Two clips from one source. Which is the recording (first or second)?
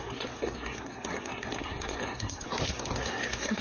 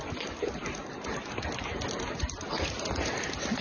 second